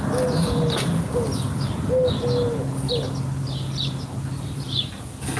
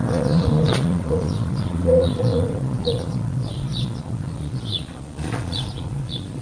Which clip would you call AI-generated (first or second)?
second